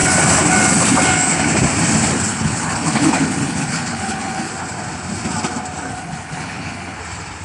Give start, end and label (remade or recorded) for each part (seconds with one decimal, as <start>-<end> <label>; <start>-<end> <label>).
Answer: 0.0-2.3 recorded; 2.3-4.5 remade; 4.5-5.9 recorded; 5.9-7.0 remade; 7.0-7.4 recorded